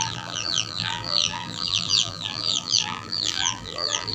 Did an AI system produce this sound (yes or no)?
yes